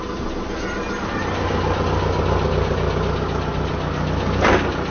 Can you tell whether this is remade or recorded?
recorded